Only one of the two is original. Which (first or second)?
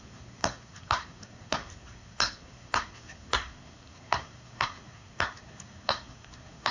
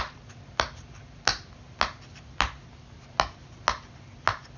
second